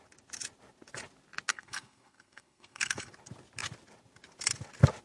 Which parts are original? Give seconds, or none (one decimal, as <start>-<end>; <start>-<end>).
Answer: 0.0-1.5; 3.1-5.0